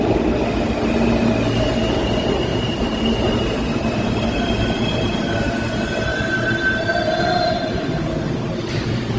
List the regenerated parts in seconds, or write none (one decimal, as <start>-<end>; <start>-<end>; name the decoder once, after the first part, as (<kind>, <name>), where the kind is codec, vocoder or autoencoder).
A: 2.5-5.4 (vocoder, BigVGAN v2); 6.1-8.0